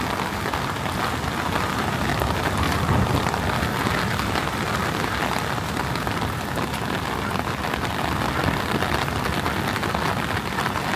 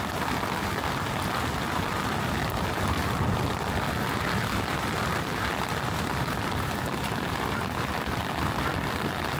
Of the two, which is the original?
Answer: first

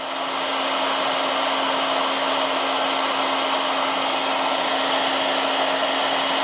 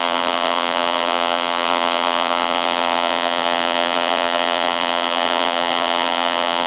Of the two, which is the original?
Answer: first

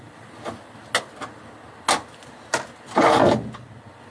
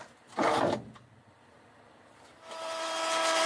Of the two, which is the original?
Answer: first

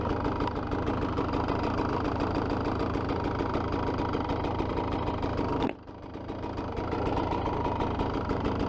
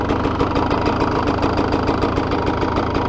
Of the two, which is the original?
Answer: second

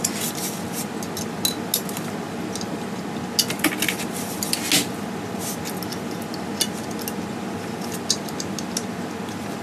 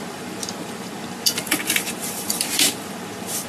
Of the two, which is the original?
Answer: first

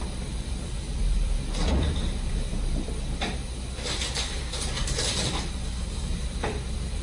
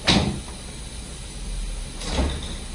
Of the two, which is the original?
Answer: second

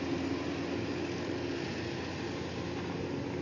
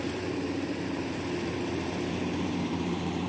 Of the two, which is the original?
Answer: first